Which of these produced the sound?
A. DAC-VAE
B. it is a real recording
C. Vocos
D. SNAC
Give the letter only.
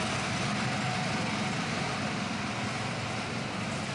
B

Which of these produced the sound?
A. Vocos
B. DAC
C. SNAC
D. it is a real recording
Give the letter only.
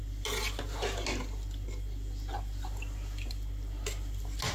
D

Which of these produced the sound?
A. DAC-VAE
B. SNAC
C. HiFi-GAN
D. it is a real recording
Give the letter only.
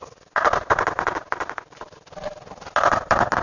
D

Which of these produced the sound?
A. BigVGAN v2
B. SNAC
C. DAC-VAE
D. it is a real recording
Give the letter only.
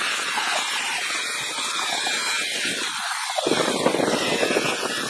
D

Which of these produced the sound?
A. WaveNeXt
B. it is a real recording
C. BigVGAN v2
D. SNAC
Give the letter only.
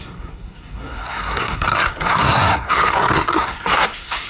D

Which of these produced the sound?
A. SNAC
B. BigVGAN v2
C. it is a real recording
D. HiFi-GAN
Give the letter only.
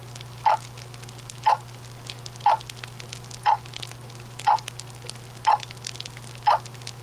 C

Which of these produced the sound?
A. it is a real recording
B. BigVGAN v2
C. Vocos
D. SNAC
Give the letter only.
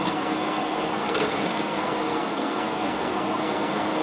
D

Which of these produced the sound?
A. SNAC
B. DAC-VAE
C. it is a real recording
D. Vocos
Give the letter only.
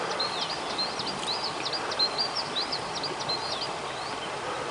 C